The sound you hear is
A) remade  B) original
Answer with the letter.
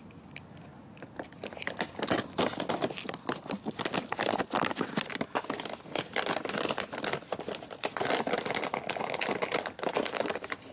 B